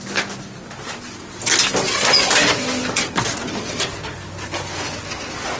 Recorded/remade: recorded